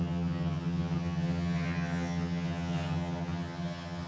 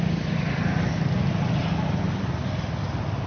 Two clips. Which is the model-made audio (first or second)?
first